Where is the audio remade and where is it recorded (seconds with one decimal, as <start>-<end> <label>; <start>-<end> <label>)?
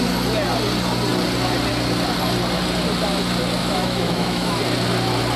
0.0-3.6 recorded; 3.6-4.6 remade; 4.6-5.4 recorded